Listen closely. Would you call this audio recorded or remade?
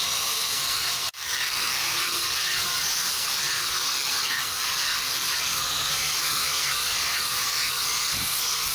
remade